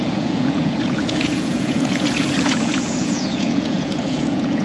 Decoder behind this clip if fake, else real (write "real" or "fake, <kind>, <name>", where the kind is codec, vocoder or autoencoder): fake, vocoder, Vocos